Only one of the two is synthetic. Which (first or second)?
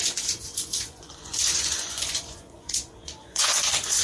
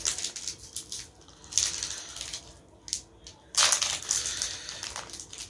first